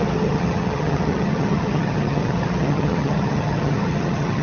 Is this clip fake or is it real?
fake